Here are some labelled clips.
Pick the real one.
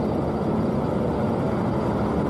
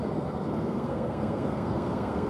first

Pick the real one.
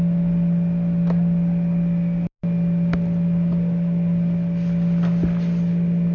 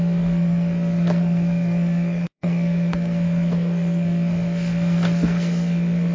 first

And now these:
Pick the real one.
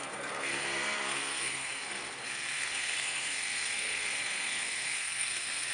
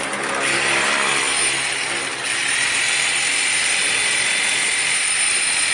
second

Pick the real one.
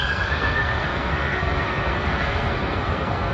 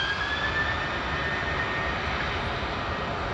second